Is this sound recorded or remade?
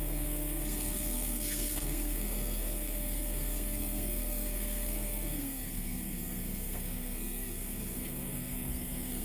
remade